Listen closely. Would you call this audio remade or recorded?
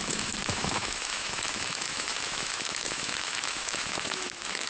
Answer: remade